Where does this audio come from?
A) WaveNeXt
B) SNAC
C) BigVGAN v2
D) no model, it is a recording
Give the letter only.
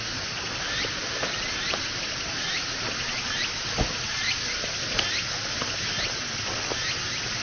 D